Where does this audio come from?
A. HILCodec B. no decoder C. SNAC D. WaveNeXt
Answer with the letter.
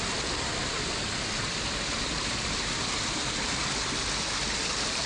B